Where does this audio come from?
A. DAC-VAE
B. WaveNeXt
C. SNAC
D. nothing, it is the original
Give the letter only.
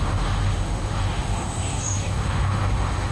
A